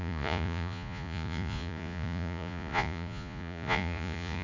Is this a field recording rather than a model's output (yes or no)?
no